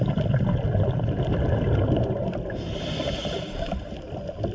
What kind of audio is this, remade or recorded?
recorded